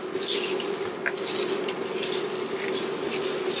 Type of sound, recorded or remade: recorded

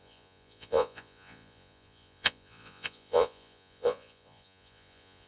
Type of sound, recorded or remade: remade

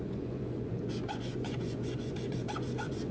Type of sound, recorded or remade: remade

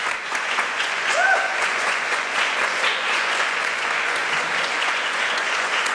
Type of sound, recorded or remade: remade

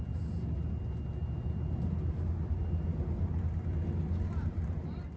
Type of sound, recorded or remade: recorded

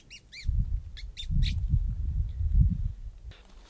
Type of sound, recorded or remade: recorded